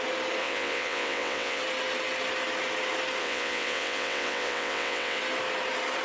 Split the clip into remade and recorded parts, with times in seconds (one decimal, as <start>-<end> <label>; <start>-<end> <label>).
0.0-0.4 recorded; 0.4-1.6 remade; 1.6-3.2 recorded; 3.2-5.2 remade; 5.2-6.0 recorded